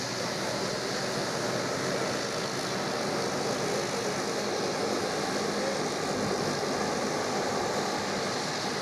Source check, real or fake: real